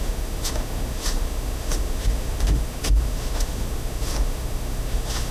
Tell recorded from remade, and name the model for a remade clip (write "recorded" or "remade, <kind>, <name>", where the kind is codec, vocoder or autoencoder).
remade, autoencoder, DAC-VAE